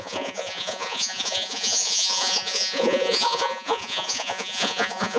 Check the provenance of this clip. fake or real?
fake